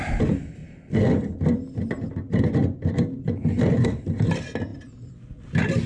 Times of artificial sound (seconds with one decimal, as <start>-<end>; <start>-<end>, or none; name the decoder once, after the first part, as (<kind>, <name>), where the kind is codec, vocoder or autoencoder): 0.0-0.6 (vocoder, BigVGAN v2); 4.0-5.9

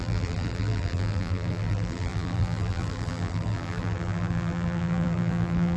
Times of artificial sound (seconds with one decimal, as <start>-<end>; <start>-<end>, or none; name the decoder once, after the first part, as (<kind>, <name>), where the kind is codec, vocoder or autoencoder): 0.0-5.8 (vocoder, BigVGAN v2)